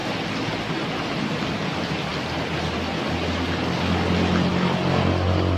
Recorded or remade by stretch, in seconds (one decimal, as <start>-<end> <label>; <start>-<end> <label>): 0.0-5.6 recorded